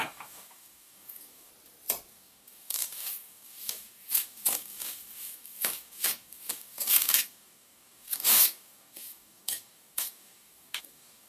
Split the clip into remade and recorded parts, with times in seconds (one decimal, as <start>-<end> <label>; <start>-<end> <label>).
0.0-1.5 remade; 1.5-2.1 recorded; 2.1-11.3 remade